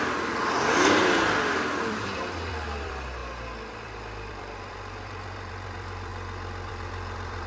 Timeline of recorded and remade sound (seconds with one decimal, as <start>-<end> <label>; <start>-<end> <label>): 0.0-6.1 remade; 6.1-6.7 recorded; 6.7-7.5 remade